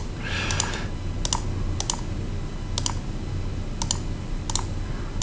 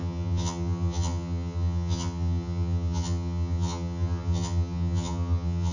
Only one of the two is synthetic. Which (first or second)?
second